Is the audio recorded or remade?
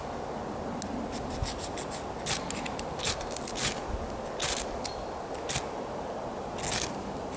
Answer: recorded